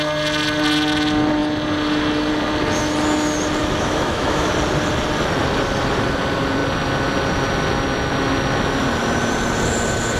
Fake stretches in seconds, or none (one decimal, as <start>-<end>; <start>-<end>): 3.6-4.5